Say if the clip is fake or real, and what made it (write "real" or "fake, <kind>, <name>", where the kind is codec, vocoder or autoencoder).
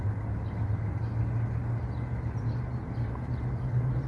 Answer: real